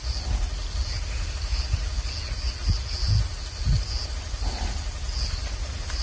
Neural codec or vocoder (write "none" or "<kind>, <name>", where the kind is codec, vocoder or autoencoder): none